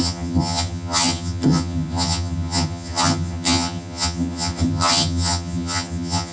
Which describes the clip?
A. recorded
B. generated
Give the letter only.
B